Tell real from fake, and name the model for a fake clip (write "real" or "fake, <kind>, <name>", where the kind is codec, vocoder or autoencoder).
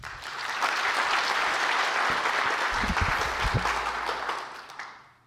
real